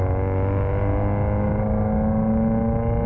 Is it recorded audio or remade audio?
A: recorded